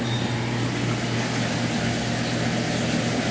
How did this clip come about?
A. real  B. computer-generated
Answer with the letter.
A